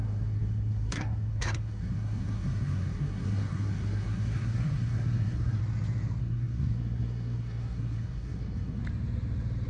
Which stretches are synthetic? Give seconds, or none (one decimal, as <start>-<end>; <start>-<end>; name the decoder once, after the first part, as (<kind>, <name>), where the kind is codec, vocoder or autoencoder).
0.0-5.6 (codec, SNAC); 6.2-8.8

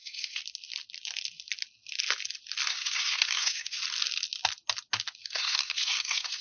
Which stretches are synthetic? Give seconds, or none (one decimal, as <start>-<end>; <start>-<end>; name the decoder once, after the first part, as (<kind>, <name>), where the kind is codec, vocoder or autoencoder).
0.0-0.4 (codec, SNAC); 2.7-3.8; 5.2-6.4

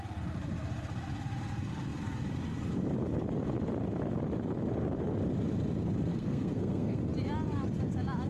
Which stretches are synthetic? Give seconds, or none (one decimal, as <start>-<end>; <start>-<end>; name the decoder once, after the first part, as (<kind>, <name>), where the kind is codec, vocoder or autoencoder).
6.1-7.0 (codec, SNAC)

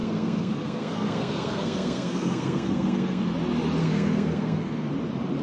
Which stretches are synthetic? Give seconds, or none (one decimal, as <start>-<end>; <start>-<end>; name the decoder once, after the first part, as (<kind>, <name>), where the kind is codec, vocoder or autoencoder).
0.0-3.2 (codec, SNAC); 3.8-4.9

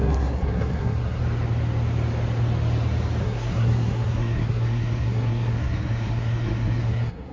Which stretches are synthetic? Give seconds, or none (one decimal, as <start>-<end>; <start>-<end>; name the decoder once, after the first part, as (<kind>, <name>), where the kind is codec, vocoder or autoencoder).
0.0-1.2 (codec, SNAC); 3.2-7.3

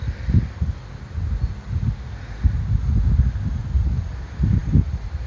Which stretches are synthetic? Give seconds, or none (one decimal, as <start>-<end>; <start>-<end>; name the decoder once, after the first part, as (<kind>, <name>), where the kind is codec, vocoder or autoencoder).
none